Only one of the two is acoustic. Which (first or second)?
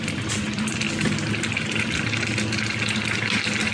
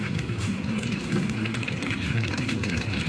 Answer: first